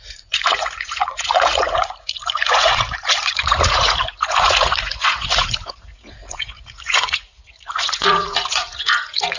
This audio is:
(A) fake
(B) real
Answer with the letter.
A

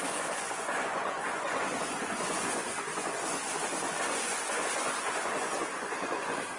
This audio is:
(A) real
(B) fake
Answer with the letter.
B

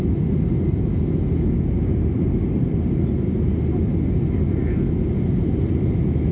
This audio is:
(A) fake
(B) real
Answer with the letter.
B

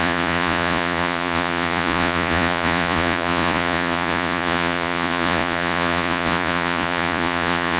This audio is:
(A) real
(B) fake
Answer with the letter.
B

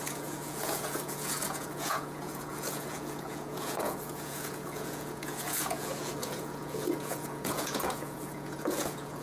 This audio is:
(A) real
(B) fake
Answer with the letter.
B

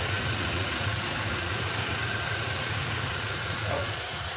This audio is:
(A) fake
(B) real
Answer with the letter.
A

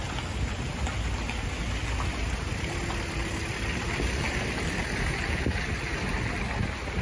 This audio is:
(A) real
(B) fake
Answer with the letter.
A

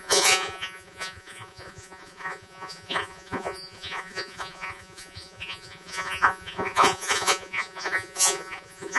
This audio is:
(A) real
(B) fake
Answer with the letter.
B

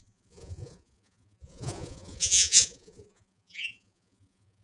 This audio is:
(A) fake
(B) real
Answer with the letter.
A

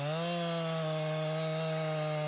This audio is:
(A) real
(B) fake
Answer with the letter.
A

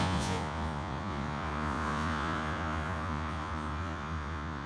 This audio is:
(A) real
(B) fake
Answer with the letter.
B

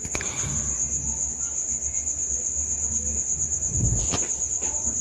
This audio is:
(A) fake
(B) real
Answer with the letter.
B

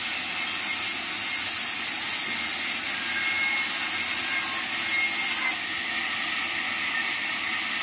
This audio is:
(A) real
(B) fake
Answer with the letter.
A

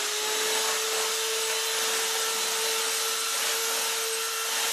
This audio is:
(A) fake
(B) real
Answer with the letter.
B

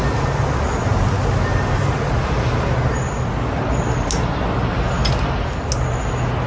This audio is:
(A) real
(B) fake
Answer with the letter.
A